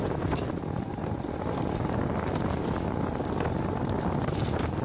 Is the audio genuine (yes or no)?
yes